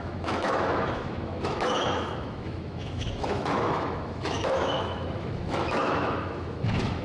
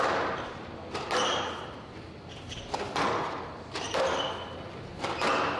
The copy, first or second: first